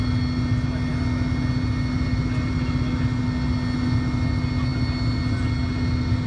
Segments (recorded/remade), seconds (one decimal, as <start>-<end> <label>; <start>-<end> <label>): 0.0-6.3 recorded